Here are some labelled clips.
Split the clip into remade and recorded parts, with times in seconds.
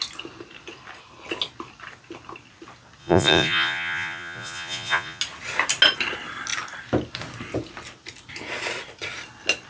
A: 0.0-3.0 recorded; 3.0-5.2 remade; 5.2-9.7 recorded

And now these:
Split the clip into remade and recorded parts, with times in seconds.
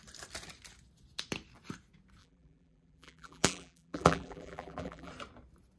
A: 0.0-2.2 recorded; 2.2-5.1 remade; 5.1-5.8 recorded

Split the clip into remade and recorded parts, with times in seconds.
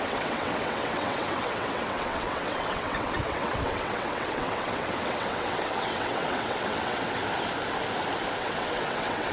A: 0.0-7.2 remade; 7.2-8.4 recorded; 8.4-9.3 remade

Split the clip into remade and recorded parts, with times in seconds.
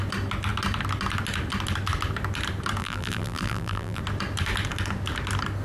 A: 0.0-2.8 recorded; 2.8-4.0 remade; 4.0-5.6 recorded